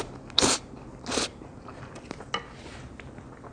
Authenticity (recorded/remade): recorded